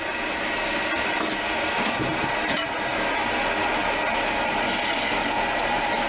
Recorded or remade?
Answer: recorded